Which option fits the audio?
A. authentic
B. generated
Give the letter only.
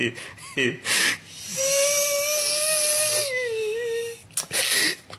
A